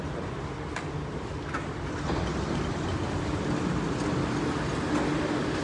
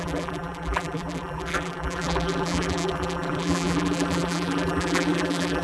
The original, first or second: first